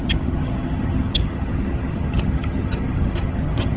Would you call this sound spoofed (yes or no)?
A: yes